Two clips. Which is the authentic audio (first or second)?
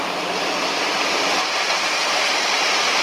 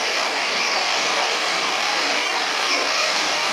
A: first